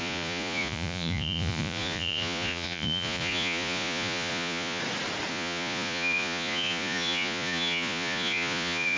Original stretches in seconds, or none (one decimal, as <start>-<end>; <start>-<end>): 4.8-5.3